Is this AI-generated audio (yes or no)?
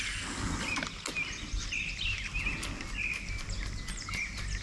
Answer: no